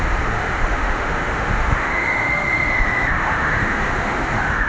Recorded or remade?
remade